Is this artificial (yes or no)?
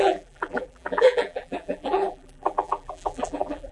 yes